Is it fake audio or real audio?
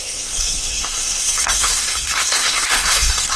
fake